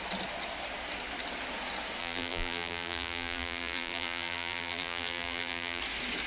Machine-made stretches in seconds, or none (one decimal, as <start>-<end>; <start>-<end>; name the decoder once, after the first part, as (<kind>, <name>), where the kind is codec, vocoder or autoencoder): 2.0-5.8 (vocoder, BigVGAN v2)